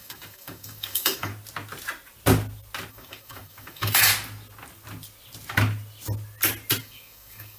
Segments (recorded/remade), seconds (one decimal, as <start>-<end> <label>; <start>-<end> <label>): 0.0-1.3 remade; 1.3-2.9 recorded; 2.9-4.1 remade; 4.1-6.8 recorded; 6.8-7.6 remade